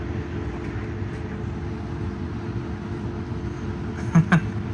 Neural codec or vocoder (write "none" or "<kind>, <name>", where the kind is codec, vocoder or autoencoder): none